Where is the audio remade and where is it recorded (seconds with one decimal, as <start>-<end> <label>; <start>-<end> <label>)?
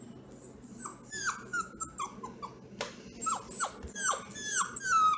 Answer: 0.0-5.2 recorded